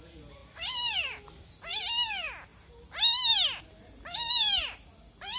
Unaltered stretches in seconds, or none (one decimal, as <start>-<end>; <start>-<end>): 0.0-5.4